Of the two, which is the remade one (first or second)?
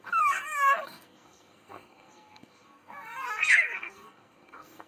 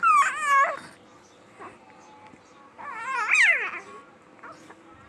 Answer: first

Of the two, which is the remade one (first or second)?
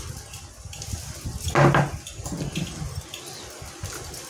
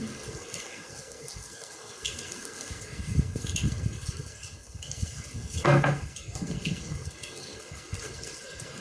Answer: second